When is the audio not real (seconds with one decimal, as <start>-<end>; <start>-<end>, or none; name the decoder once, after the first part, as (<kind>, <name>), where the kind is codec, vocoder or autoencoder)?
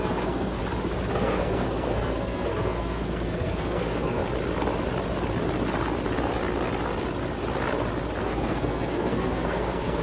0.0-0.6 (codec, SNAC); 1.1-4.2; 8.2-10.0